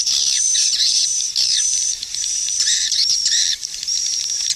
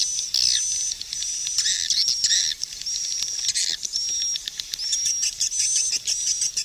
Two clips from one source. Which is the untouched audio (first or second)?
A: second